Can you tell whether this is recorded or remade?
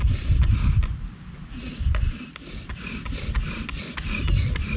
recorded